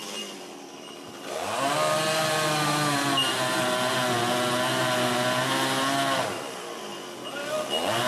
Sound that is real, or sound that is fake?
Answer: real